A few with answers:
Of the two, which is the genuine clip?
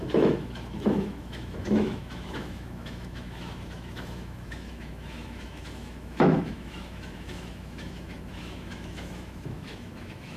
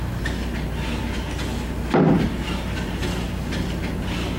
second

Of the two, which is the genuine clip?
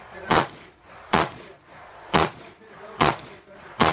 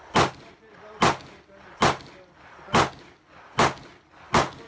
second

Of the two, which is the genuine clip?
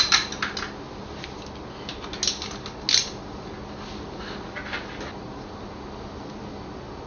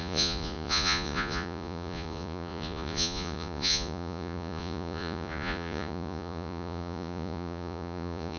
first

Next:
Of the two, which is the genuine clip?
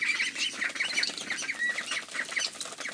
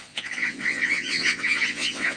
first